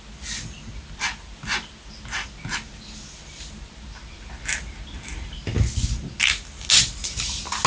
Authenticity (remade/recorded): recorded